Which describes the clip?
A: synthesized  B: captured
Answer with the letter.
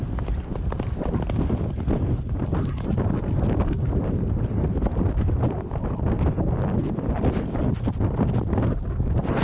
B